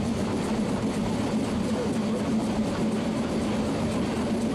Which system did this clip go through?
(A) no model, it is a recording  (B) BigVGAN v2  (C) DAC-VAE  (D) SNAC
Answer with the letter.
A